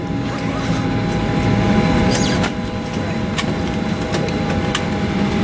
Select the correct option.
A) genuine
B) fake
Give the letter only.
A